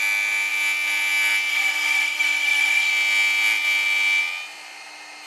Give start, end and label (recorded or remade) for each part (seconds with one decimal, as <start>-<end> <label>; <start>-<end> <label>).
0.0-1.5 recorded; 1.5-2.9 remade; 2.9-5.3 recorded